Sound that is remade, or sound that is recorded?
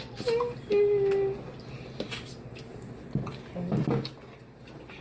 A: recorded